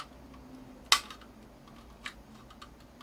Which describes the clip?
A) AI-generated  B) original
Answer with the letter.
B